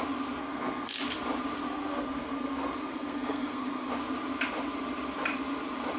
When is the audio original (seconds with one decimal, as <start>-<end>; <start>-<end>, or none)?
0.0-0.4; 0.9-1.6; 3.9-6.0